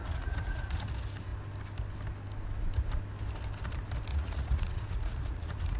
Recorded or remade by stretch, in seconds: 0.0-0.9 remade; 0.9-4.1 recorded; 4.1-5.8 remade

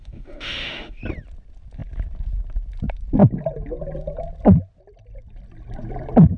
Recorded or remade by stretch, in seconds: 0.0-1.0 remade; 1.0-6.4 recorded